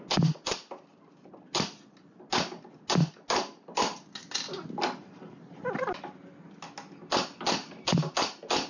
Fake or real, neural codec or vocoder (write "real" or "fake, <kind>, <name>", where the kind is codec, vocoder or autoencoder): real